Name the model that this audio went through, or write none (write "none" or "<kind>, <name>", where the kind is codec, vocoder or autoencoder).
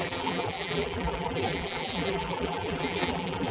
vocoder, BigVGAN v2